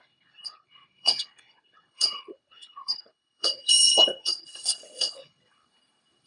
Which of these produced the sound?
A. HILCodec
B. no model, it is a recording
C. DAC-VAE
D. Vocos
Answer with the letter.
A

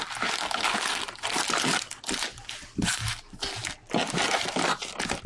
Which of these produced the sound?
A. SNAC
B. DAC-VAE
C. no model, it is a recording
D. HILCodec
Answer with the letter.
C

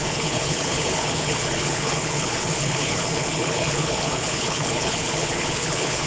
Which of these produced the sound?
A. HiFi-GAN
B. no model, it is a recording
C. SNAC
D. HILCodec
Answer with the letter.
D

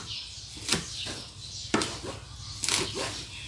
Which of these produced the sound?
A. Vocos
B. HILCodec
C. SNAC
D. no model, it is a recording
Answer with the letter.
D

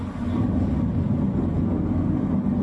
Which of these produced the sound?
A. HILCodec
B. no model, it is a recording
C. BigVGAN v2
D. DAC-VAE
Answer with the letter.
B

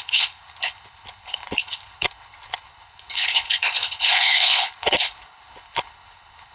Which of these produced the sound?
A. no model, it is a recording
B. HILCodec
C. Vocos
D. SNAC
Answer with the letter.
B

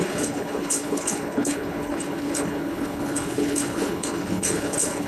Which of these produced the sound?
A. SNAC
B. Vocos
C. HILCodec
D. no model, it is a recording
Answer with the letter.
C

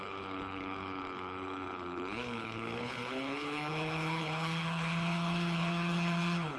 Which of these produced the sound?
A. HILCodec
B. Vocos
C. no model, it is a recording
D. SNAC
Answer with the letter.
A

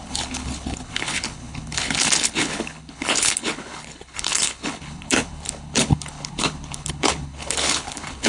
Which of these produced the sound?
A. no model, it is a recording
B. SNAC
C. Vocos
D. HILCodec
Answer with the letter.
D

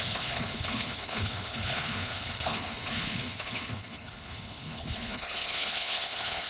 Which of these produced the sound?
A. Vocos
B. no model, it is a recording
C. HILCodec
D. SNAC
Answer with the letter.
C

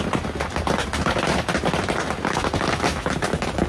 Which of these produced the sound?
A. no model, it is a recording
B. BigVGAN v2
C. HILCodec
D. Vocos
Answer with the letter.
A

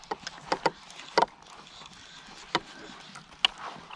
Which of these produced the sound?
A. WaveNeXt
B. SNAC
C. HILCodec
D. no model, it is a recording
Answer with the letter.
D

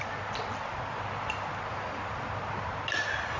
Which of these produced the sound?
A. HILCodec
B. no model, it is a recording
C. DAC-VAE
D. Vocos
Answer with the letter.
B